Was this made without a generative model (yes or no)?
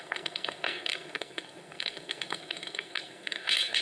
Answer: no